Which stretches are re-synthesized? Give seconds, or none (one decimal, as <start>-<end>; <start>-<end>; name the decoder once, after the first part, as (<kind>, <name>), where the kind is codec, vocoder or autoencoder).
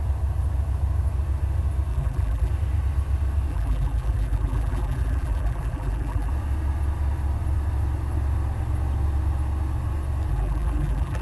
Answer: 1.9-2.5 (vocoder, BigVGAN v2); 3.5-6.3; 10.3-11.2